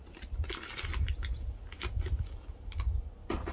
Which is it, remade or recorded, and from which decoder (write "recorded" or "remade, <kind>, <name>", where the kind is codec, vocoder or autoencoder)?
recorded